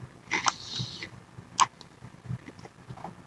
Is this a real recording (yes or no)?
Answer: yes